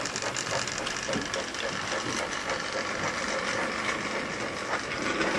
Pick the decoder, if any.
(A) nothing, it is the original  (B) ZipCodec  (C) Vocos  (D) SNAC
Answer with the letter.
A